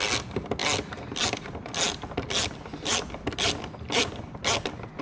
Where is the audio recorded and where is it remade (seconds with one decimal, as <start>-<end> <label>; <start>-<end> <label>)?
0.0-5.0 recorded